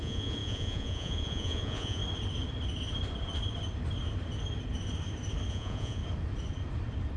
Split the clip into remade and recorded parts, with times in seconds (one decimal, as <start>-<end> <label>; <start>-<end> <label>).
0.0-2.0 remade; 2.0-5.5 recorded; 5.5-6.0 remade; 6.0-7.2 recorded